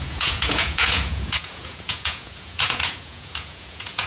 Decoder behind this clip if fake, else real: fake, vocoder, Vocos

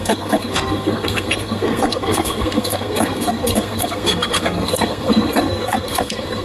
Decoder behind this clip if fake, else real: fake, codec, SNAC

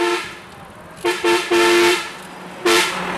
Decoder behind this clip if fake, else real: real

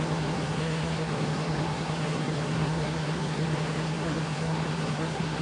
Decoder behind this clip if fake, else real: fake, codec, SNAC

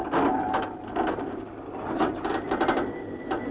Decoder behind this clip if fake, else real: fake, vocoder, BigVGAN v2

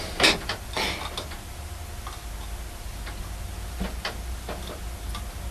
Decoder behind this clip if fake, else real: real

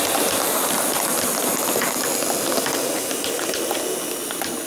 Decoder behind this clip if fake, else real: real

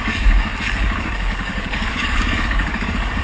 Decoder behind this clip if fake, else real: fake, codec, DAC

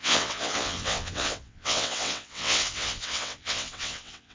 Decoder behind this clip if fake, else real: fake, vocoder, WaveNeXt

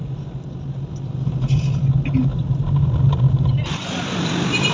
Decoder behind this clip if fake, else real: real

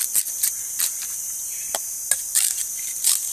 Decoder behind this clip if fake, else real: fake, vocoder, BigVGAN v2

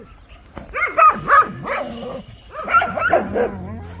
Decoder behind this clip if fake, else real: real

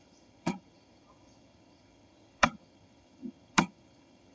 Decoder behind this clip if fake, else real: fake, vocoder, HiFi-GAN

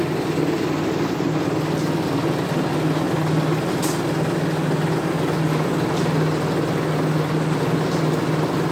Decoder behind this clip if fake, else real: real